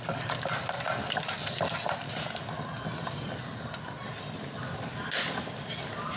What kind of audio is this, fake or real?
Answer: real